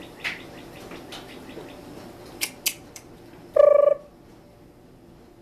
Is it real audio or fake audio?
real